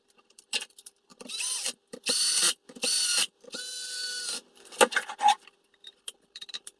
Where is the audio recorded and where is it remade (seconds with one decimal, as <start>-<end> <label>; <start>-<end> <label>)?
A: 0.0-6.8 remade

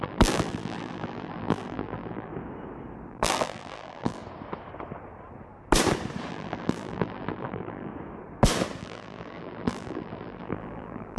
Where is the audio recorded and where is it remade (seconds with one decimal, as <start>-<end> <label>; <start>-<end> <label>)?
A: 0.0-2.3 remade; 2.3-3.1 recorded; 3.1-4.2 remade; 4.2-6.3 recorded; 6.3-7.9 remade; 7.9-8.8 recorded; 8.8-11.2 remade

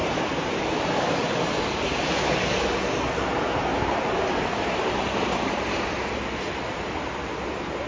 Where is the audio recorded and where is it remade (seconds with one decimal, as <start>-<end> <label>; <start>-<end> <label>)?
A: 0.0-0.7 remade; 0.7-3.7 recorded; 3.7-7.1 remade; 7.1-7.9 recorded

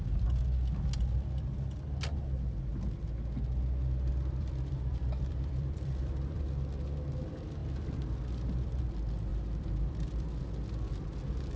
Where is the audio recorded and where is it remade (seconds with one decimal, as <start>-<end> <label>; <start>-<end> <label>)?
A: 0.0-4.1 recorded; 4.1-6.4 remade; 6.4-7.6 recorded; 7.6-8.8 remade; 8.8-9.3 recorded; 9.3-10.4 remade; 10.4-11.6 recorded